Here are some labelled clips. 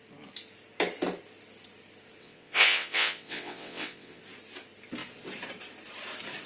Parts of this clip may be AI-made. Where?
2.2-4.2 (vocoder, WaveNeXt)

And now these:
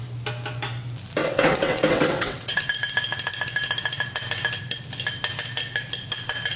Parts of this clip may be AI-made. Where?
1.2-2.6 (vocoder, WaveNeXt)

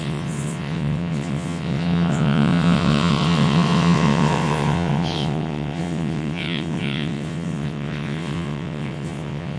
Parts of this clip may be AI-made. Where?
0.0-9.6 (vocoder, WaveNeXt)

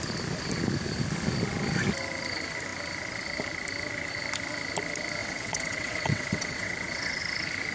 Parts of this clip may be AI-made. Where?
5.2-7.2 (vocoder, WaveNeXt)

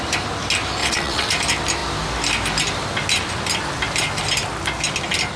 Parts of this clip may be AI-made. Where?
0.8-1.3 (vocoder, WaveNeXt)

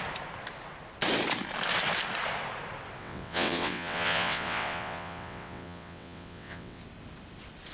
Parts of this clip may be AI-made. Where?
3.0-6.8 (vocoder, WaveNeXt)

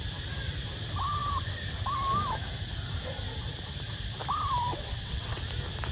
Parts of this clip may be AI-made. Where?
4.7-5.4 (vocoder, WaveNeXt)

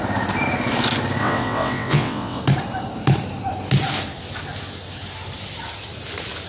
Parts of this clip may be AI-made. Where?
1.2-2.4 (vocoder, WaveNeXt)